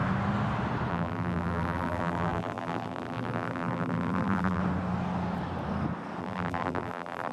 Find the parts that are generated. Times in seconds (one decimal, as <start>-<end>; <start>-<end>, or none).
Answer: 0.9-4.6; 6.2-7.3